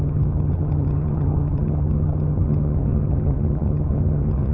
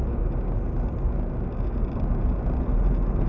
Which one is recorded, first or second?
second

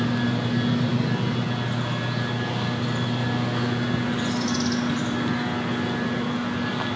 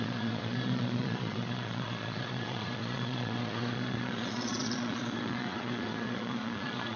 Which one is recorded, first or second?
first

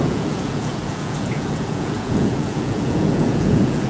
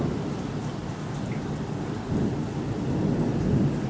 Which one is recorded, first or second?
second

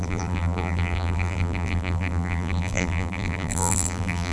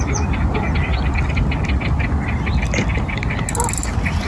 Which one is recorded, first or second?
second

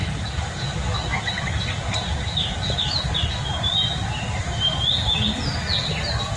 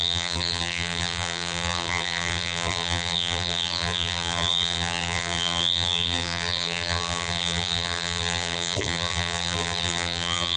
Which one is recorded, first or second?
first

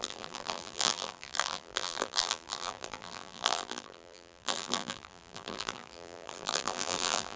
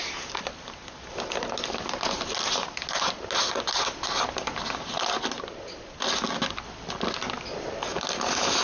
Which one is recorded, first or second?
second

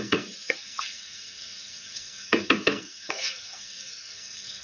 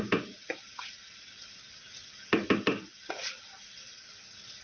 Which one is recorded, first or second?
second